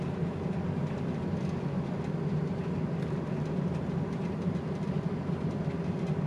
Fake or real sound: real